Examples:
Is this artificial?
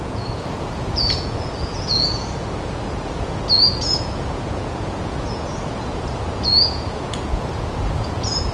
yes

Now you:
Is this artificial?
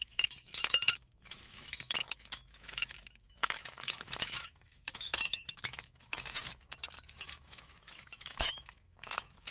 yes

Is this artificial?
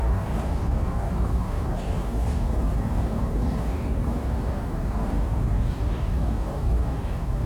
yes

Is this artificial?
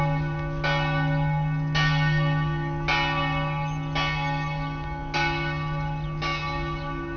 no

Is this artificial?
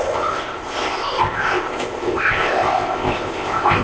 yes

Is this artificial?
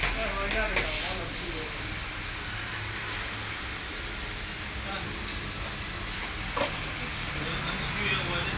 no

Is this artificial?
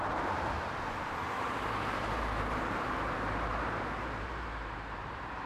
yes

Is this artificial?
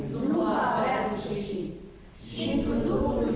no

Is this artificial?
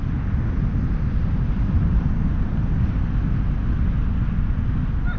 no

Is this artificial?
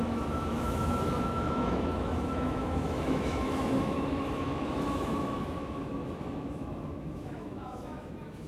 yes